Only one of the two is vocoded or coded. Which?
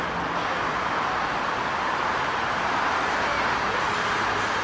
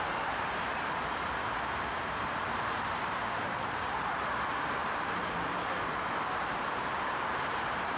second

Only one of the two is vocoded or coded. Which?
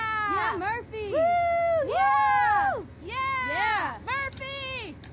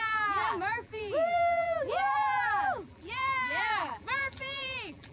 second